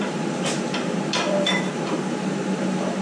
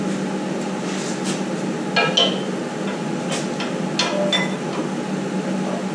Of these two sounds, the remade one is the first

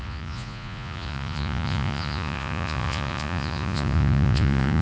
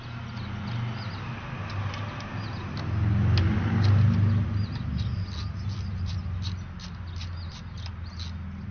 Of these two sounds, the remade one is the first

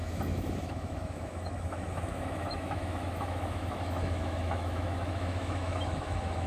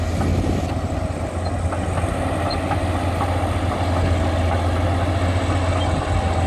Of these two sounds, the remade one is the first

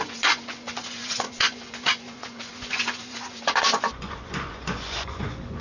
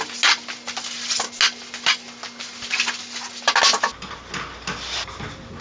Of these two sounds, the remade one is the first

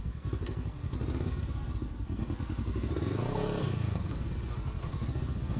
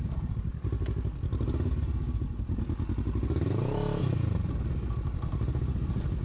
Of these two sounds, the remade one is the first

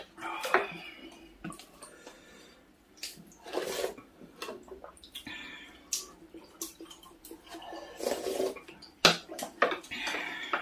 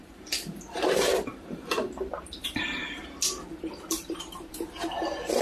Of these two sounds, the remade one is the second